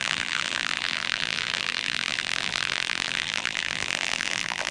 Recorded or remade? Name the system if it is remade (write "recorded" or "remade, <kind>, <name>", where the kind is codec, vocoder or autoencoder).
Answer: remade, vocoder, BigVGAN v2